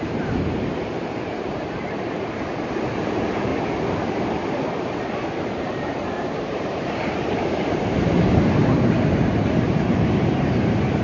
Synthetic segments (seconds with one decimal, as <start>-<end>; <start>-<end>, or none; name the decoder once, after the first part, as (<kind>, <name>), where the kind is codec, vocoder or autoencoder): 0.0-3.5 (vocoder, BigVGAN v2); 4.8-11.0